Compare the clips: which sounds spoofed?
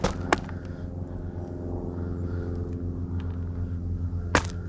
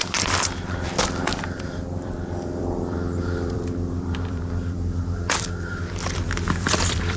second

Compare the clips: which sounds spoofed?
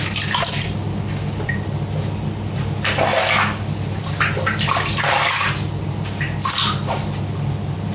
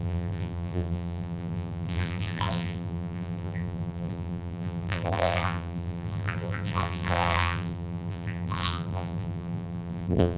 second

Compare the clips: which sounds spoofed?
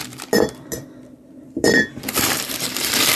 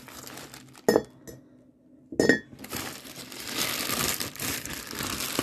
first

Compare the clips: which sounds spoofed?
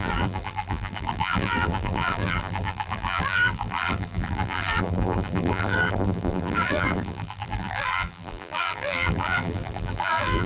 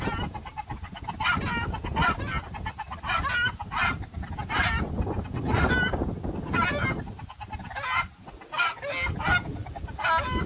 first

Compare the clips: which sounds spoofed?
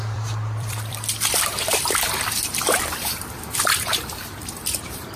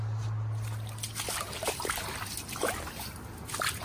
first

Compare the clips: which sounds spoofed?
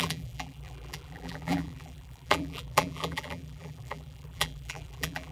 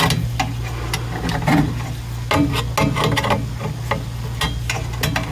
first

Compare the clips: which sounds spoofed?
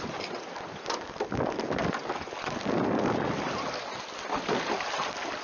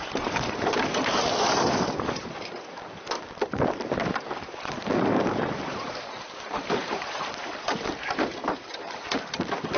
second